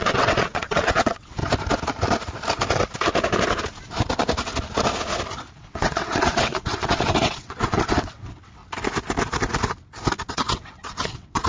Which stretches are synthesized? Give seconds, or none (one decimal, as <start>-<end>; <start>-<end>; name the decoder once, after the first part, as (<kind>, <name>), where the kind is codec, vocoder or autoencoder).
0.0-1.4 (vocoder, WaveNeXt); 5.6-8.6; 10.3-11.5